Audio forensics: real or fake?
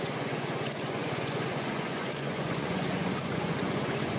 fake